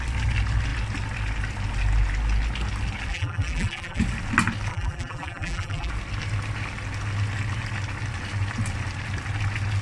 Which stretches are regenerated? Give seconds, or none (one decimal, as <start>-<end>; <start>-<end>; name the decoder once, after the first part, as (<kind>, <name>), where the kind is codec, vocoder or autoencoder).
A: 3.1-4.0 (vocoder, BigVGAN v2); 4.7-5.9